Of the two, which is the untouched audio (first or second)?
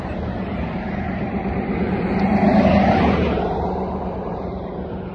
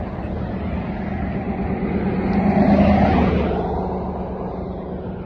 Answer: second